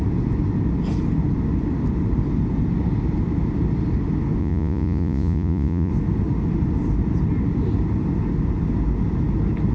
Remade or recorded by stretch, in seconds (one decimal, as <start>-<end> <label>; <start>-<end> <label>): 0.0-4.4 recorded; 4.4-5.9 remade; 5.9-9.7 recorded